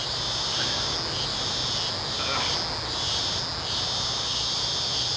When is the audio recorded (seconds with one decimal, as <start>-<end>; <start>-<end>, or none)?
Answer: 0.0-5.2